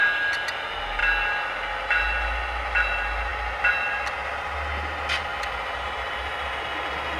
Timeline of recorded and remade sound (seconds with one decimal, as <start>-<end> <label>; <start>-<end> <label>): 0.0-7.2 recorded

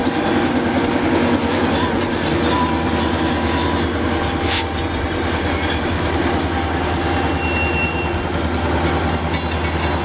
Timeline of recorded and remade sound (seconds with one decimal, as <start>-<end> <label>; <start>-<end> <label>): 0.0-10.0 recorded

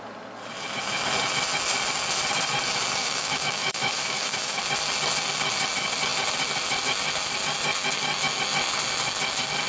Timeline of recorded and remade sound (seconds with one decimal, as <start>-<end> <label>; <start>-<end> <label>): 0.0-3.0 recorded; 3.0-4.6 remade; 4.6-9.7 recorded

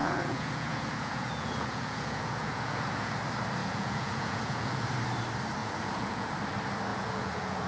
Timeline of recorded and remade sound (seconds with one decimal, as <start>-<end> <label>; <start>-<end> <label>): 0.0-3.1 remade; 3.1-3.6 recorded; 3.6-4.9 remade; 4.9-5.6 recorded; 5.6-6.3 remade; 6.3-6.9 recorded; 6.9-7.7 remade

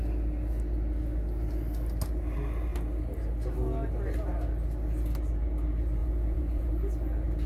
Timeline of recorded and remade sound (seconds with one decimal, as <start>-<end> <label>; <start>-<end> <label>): 0.0-6.0 recorded; 6.0-6.7 remade; 6.7-7.5 recorded

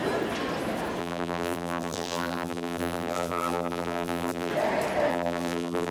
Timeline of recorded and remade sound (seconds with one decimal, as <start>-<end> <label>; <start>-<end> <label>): 0.0-1.0 recorded; 1.0-4.5 remade; 4.5-5.1 recorded; 5.1-5.9 remade